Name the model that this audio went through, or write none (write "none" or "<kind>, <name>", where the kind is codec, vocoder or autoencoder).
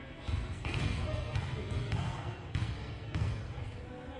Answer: codec, SNAC